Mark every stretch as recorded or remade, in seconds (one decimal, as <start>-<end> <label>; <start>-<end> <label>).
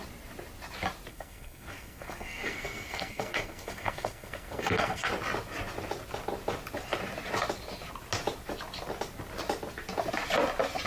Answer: 0.0-1.1 recorded; 1.1-5.1 remade; 5.1-10.9 recorded